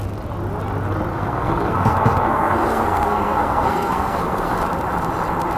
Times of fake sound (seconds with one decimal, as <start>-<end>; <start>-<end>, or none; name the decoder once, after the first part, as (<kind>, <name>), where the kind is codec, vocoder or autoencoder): 1.1-4.5 (codec, SNAC)